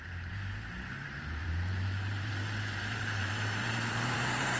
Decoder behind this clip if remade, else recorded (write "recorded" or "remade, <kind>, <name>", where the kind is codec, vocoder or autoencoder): remade, vocoder, BigVGAN v2